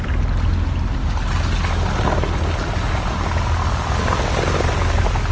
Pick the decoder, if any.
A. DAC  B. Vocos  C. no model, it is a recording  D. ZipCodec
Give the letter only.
C